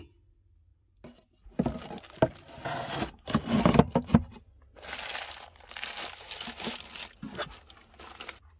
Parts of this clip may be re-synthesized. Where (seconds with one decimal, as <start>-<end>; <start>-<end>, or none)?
none